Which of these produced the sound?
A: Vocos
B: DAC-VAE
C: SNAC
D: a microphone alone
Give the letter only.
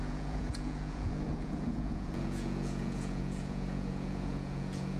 A